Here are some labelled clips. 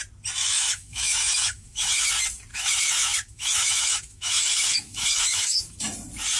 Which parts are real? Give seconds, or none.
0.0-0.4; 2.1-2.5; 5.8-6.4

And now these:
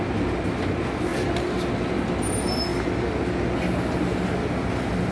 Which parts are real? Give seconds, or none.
0.0-5.1

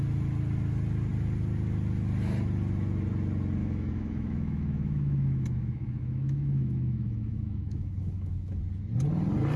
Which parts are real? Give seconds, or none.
0.0-3.6; 8.6-9.6

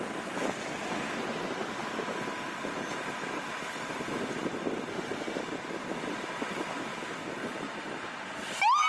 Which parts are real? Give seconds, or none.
0.0-4.9; 5.4-8.9

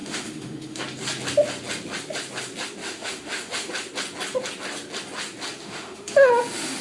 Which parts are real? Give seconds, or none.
0.8-2.8; 3.7-5.6; 6.3-6.8

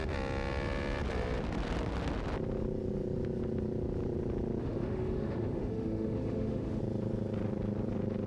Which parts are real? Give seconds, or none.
0.0-4.6; 6.8-8.3

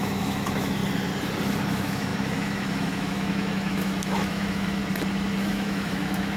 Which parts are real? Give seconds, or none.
0.8-1.7; 4.8-5.4